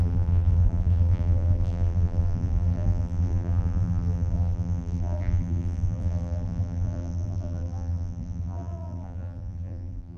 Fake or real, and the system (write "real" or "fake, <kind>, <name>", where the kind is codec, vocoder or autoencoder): fake, vocoder, BigVGAN v2